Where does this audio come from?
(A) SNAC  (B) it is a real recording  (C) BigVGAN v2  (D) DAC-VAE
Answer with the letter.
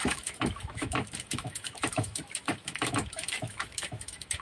D